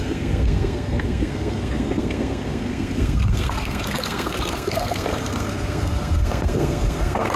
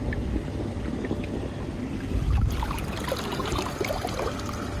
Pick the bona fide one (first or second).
second